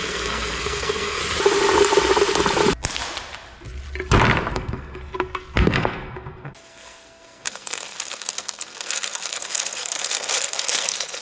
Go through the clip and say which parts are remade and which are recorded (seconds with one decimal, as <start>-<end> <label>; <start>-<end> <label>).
0.0-1.2 remade; 1.2-4.5 recorded; 4.5-11.2 remade